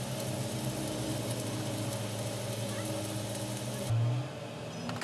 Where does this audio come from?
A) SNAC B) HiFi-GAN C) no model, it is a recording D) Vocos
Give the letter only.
C